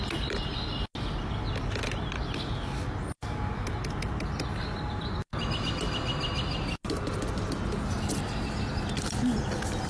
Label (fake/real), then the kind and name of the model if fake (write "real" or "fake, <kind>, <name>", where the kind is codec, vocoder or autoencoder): real